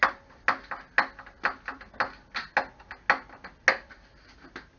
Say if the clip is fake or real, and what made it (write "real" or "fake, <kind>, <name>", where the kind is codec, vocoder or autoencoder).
real